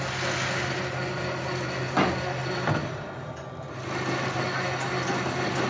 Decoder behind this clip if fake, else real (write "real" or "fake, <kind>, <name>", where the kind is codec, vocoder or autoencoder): real